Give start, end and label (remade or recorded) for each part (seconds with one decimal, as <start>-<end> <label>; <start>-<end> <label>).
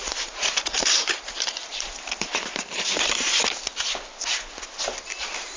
0.0-3.4 remade; 3.4-5.6 recorded